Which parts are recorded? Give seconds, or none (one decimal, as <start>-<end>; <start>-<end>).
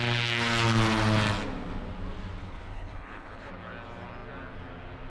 0.0-2.4; 3.5-5.1